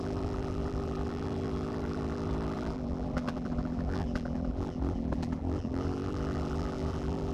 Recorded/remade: remade